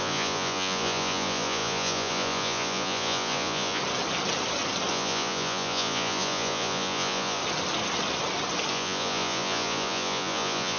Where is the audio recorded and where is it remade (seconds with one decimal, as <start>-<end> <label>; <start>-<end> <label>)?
0.0-3.8 remade; 3.8-4.9 recorded; 4.9-7.4 remade; 7.4-8.7 recorded; 8.7-10.8 remade